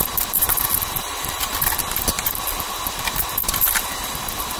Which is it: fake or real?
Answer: fake